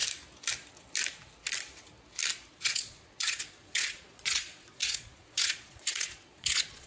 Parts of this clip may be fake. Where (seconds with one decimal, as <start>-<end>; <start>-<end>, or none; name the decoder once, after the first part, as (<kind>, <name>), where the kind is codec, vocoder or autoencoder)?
2.6-6.9 (vocoder, Vocos)